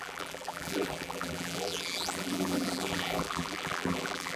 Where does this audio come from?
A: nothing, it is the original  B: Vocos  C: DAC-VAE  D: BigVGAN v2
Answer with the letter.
D